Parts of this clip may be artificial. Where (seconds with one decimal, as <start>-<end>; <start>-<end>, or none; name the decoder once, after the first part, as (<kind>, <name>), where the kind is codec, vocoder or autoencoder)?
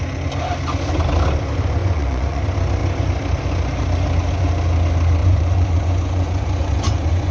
1.8-2.4 (vocoder, Vocos); 5.2-7.3